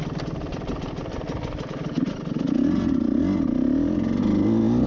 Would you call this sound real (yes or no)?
yes